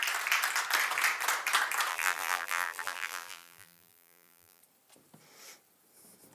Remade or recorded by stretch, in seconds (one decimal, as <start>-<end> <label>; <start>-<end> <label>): 0.0-1.9 recorded; 1.9-4.6 remade; 4.6-6.3 recorded